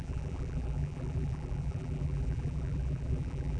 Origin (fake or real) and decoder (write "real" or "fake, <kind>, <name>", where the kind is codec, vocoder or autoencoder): fake, vocoder, BigVGAN v2